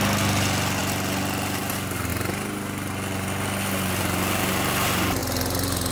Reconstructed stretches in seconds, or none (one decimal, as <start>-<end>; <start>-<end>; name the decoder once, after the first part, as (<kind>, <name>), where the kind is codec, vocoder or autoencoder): none